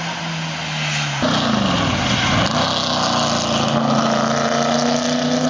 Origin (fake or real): real